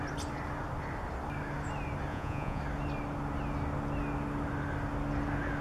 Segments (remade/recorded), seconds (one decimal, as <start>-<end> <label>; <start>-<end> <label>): 0.0-2.1 recorded; 2.1-2.6 remade; 2.6-5.6 recorded